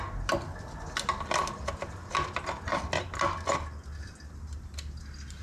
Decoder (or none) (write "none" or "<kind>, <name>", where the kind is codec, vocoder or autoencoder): none